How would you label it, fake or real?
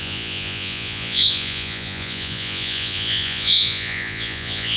fake